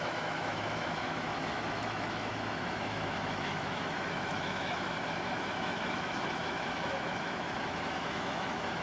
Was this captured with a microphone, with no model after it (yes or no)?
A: no